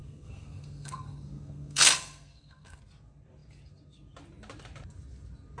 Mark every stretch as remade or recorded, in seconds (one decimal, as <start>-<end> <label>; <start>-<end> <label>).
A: 0.0-2.8 remade; 2.8-5.6 recorded